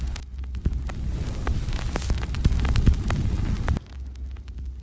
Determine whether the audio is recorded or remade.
recorded